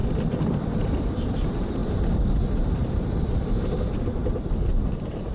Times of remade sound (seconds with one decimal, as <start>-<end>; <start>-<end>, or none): 0.7-4.2; 4.7-5.3